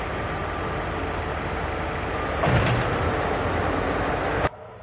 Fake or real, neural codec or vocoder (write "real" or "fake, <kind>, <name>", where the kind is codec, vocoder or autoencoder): real